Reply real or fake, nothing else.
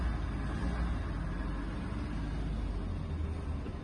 real